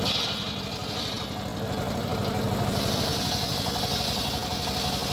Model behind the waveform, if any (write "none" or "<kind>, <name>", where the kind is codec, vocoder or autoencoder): none